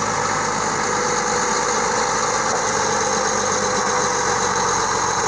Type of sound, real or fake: real